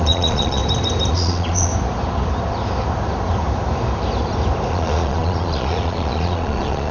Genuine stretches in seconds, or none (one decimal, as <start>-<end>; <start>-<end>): 0.6-1.1; 1.7-4.7